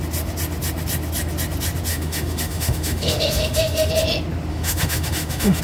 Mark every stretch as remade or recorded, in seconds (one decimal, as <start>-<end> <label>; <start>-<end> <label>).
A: 0.0-1.9 recorded; 1.9-3.9 remade; 3.9-4.5 recorded; 4.5-5.6 remade